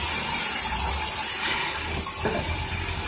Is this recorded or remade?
recorded